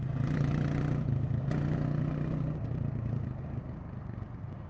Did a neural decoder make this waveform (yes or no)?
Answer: no